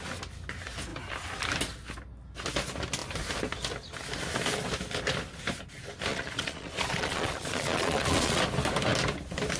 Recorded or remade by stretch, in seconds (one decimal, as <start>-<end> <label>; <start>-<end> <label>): 0.0-6.1 recorded; 6.1-8.4 remade; 8.4-9.6 recorded